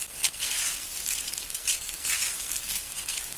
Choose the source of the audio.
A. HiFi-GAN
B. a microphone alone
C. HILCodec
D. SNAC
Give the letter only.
D